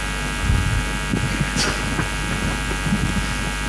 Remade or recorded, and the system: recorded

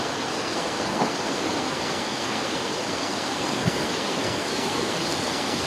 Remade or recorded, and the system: remade, codec, SNAC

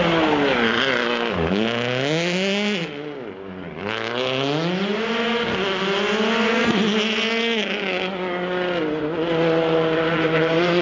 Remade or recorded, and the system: recorded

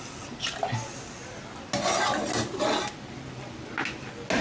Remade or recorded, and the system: recorded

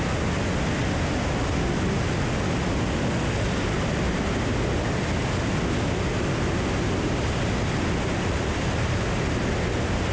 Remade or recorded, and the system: recorded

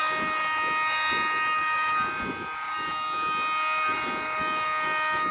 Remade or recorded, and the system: recorded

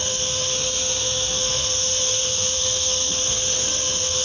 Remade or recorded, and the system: remade, codec, SNAC